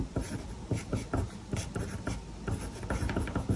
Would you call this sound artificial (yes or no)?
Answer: no